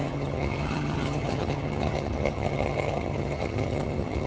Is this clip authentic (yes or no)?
no